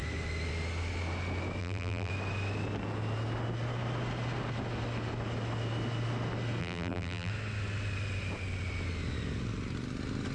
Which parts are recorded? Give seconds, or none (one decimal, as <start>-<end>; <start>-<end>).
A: 0.0-1.6; 2.1-6.6; 7.3-10.3